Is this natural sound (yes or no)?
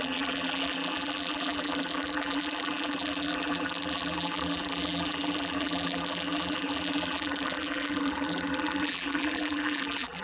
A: no